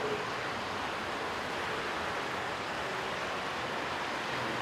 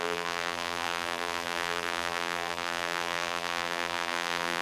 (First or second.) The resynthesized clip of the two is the second